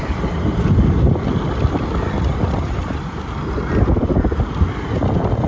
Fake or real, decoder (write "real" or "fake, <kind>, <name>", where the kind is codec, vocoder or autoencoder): fake, vocoder, BigVGAN v2